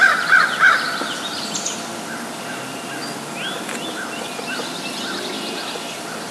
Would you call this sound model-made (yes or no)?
no